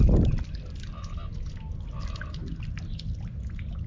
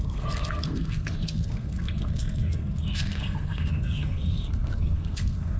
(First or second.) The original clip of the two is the first